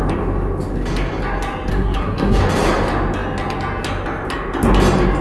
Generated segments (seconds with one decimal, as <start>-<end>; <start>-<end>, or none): 1.7-2.4